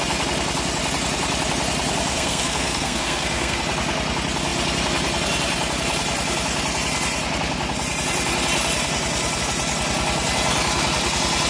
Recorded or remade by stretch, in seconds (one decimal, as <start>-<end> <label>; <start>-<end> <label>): 0.0-2.1 recorded; 2.1-3.6 remade; 3.6-11.5 recorded